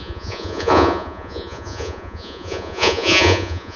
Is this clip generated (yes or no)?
yes